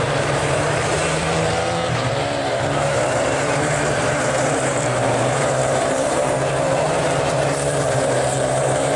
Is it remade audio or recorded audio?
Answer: remade